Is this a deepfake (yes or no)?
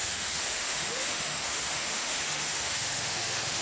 yes